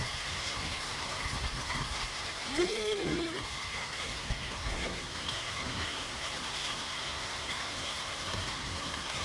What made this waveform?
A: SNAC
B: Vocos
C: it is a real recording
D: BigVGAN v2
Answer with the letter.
A